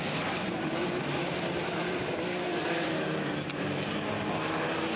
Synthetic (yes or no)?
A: yes